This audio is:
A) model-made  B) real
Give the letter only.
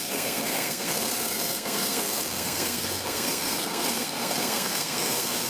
A